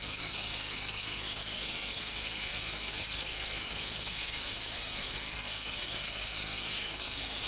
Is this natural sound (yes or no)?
no